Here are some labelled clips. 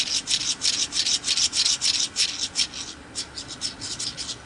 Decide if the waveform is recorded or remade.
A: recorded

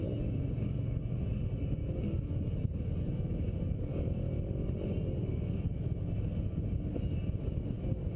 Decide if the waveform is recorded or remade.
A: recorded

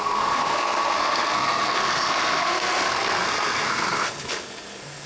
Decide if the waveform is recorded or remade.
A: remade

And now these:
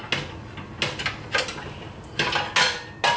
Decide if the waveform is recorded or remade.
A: recorded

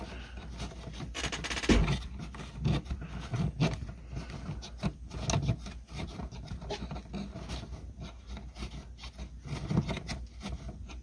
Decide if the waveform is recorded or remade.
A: recorded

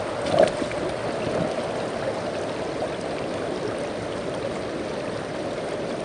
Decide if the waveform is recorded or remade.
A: recorded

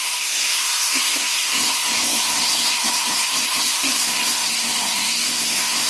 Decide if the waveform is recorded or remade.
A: remade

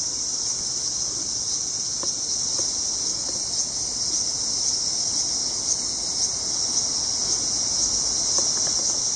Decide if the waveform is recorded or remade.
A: recorded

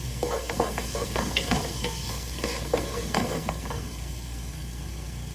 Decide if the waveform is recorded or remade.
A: remade